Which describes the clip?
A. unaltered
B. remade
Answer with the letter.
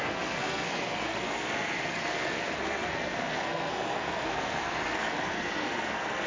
B